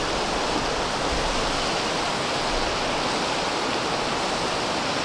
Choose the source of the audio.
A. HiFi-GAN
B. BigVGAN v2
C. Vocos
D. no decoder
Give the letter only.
D